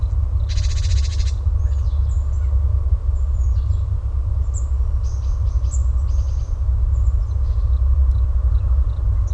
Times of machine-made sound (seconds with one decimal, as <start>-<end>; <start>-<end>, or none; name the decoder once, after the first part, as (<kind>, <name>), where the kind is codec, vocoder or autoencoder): none